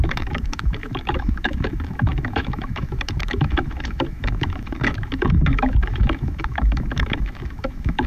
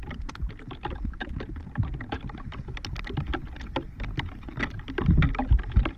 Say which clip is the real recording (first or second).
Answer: second